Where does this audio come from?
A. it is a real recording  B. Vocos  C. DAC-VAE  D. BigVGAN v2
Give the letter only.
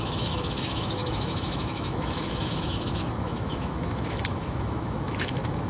C